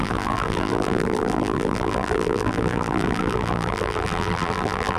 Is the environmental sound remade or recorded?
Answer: remade